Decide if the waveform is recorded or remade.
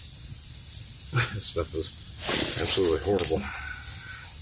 recorded